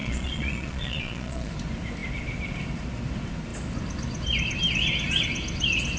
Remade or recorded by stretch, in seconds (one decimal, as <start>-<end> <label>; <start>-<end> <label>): 0.0-1.5 remade; 1.5-6.0 recorded